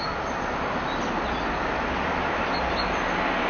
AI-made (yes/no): no